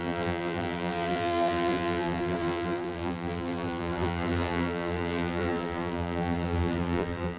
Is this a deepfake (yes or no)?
yes